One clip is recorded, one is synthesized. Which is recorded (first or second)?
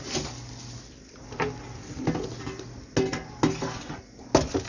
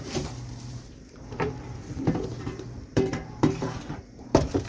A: first